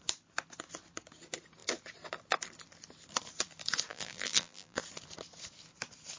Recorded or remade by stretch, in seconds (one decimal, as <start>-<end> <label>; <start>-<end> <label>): 0.0-3.9 recorded; 3.9-4.8 remade; 4.8-6.2 recorded